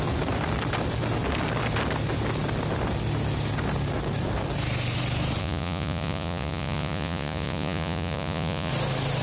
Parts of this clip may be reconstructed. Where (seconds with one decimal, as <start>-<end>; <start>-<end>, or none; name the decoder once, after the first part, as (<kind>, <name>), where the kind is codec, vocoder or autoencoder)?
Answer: 5.4-8.7 (vocoder, Vocos)